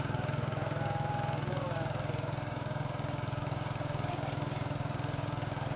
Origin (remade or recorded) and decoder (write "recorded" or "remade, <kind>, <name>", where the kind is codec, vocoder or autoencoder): remade, codec, DAC